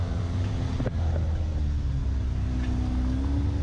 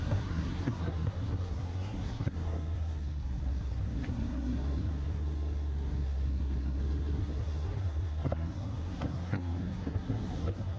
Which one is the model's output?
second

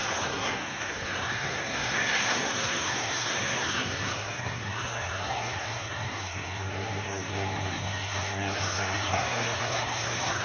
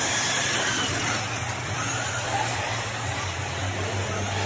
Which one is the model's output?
first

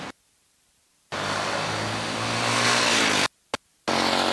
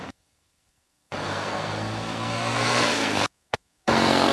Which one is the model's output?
second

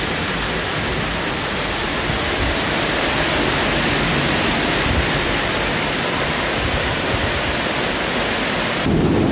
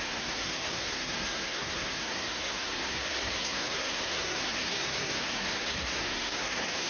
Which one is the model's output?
second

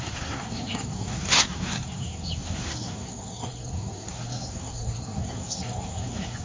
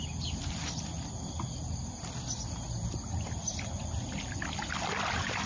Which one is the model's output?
first